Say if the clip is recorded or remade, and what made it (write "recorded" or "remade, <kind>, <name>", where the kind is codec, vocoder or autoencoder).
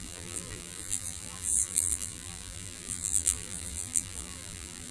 remade, vocoder, BigVGAN v2